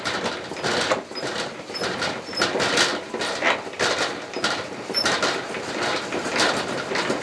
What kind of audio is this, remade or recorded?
recorded